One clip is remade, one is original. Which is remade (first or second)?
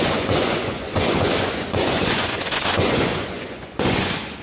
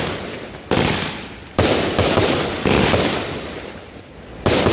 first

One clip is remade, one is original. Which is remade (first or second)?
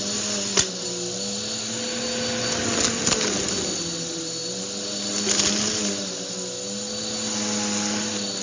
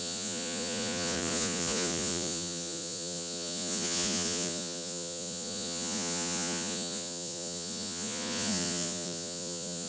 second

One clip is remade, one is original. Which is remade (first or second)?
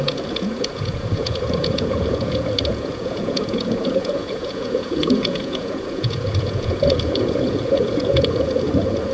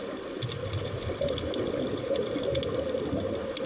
first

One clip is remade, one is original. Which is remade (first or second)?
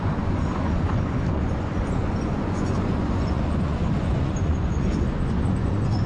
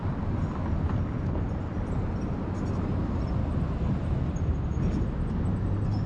first